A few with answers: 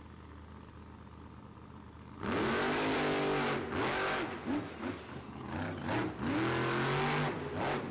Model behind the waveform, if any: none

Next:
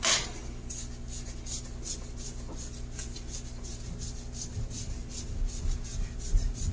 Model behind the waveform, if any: none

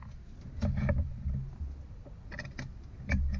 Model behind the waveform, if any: none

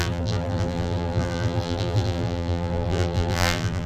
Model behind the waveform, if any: vocoder, BigVGAN v2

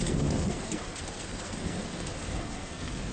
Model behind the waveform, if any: codec, SNAC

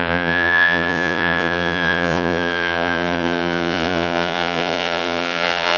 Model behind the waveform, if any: vocoder, Vocos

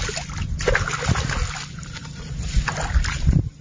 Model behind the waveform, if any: none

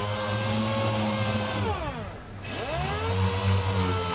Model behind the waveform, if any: none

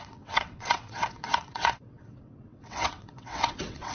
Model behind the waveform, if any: vocoder, WaveNeXt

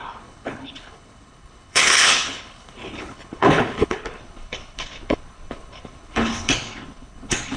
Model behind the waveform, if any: codec, HILCodec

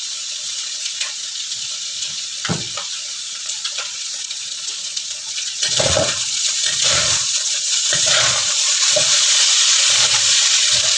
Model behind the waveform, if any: vocoder, Vocos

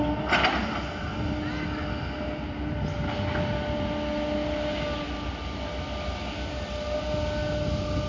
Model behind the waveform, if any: none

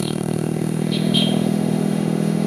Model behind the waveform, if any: autoencoder, DAC-VAE